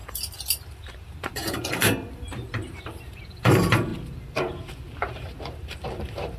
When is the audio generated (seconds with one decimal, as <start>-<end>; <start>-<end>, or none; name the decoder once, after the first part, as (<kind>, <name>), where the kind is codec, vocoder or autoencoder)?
0.7-6.4 (vocoder, BigVGAN v2)